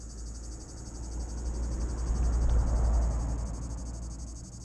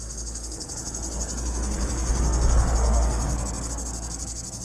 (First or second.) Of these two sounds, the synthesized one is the second